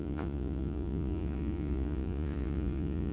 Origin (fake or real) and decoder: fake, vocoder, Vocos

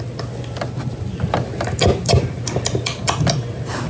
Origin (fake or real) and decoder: real